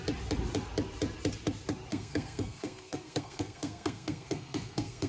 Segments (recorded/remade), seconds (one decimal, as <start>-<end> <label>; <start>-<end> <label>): 0.0-1.9 recorded; 1.9-5.1 remade